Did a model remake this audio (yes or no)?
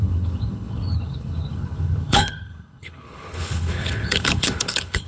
yes